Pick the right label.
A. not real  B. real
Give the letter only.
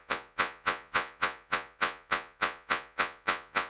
A